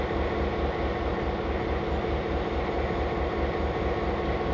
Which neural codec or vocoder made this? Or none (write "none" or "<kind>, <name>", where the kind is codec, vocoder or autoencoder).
none